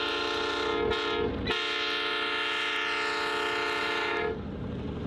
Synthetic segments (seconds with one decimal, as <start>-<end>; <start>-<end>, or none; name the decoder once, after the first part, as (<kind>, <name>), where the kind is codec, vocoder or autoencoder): 0.0-0.7 (vocoder, BigVGAN v2); 3.8-5.1